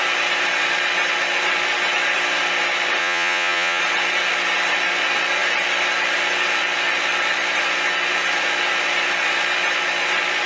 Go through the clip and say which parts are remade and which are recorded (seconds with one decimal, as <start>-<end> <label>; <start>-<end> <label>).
0.0-3.0 recorded; 3.0-3.8 remade; 3.8-10.5 recorded